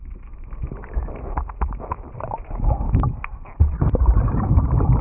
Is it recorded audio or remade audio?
recorded